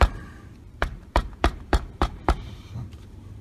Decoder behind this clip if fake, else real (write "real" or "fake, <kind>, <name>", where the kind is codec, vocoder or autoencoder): fake, vocoder, BigVGAN v2